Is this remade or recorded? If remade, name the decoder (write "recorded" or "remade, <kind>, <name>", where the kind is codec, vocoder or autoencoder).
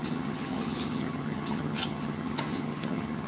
remade, vocoder, HiFi-GAN